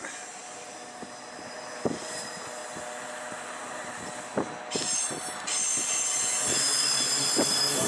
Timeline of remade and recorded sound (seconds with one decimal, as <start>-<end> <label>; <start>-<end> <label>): 0.0-7.9 recorded